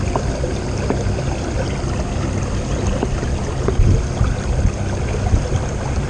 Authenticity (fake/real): real